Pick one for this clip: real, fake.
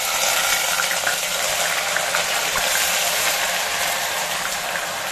real